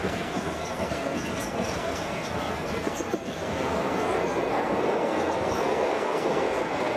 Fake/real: fake